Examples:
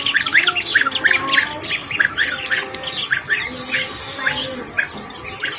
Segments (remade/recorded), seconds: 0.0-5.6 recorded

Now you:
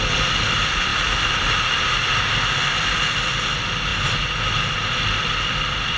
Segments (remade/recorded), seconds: 0.0-6.0 recorded